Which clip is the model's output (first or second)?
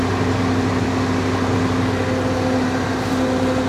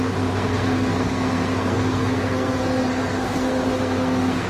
second